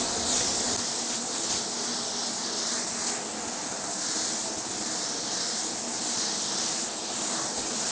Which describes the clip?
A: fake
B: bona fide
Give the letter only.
A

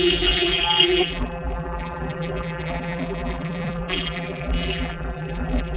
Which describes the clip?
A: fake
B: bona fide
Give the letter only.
A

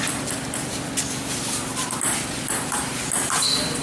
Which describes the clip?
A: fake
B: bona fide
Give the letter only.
A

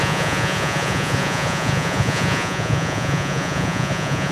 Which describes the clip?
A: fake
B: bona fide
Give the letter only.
A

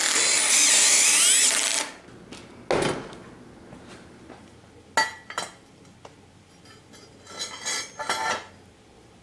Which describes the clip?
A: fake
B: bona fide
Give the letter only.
B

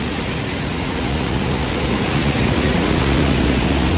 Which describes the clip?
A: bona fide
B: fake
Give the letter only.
B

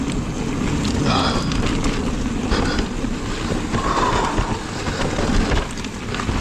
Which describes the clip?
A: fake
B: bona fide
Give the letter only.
B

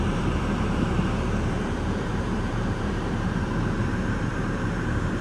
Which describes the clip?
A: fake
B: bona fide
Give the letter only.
A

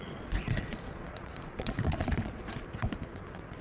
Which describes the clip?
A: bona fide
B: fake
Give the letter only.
B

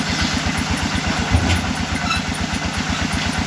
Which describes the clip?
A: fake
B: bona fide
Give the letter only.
B